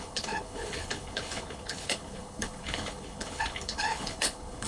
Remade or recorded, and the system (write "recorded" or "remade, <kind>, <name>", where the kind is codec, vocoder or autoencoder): remade, codec, HILCodec